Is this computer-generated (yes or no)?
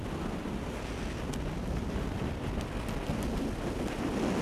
no